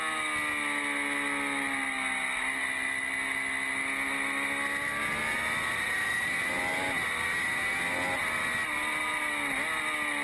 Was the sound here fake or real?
real